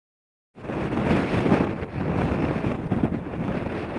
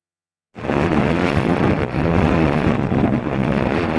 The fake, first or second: second